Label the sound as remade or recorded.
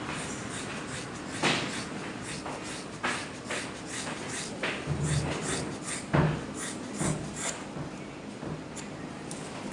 recorded